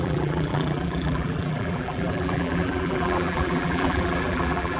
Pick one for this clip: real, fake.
fake